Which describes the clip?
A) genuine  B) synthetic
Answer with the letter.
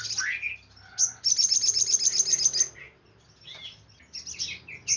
A